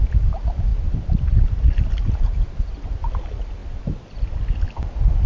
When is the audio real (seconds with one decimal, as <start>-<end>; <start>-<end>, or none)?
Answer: 0.0-5.3